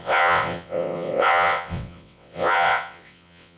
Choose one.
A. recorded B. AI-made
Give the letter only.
B